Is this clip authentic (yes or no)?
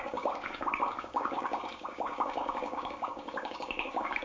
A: no